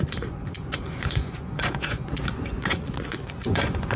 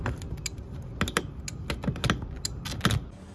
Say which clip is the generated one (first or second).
first